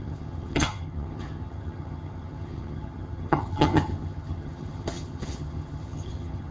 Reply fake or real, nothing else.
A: fake